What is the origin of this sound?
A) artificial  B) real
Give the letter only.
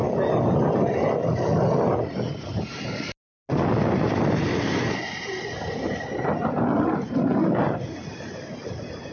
B